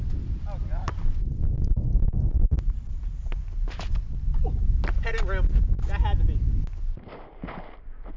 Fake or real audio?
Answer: real